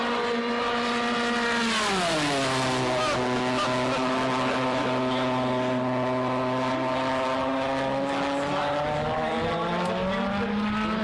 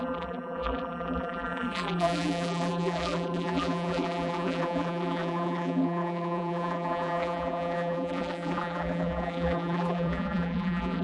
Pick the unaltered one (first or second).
first